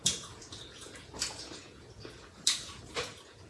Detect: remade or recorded remade